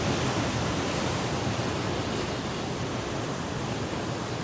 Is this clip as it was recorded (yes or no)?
yes